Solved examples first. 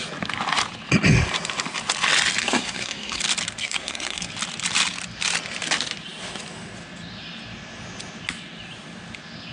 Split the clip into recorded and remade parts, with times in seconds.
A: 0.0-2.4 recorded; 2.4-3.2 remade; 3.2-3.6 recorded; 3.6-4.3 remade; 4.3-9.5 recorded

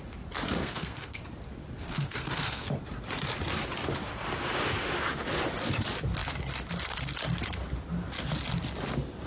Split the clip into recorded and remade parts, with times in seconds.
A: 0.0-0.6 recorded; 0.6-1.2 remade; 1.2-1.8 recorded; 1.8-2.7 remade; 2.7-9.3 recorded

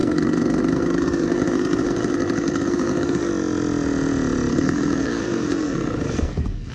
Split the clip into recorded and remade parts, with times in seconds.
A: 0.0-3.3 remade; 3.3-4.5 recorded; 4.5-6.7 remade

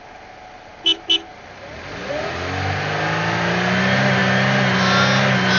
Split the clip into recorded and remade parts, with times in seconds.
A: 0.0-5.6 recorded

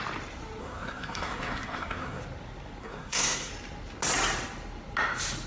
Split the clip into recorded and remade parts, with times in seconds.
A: 0.0-0.6 recorded; 0.6-2.2 remade; 2.2-2.8 recorded; 2.8-3.5 remade; 3.5-5.5 recorded

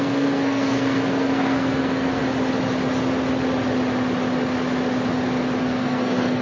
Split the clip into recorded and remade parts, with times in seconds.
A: 0.0-2.2 remade; 2.2-5.6 recorded; 5.6-6.4 remade

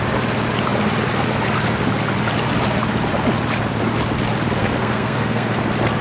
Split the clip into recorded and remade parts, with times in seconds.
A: 0.0-4.6 recorded; 4.6-5.6 remade; 5.6-6.0 recorded

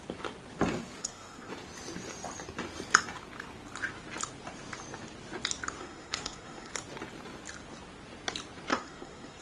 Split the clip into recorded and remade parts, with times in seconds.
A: 0.0-1.0 recorded; 1.0-1.5 remade; 1.5-5.8 recorded; 5.8-6.7 remade; 6.7-8.7 recorded; 8.7-9.4 remade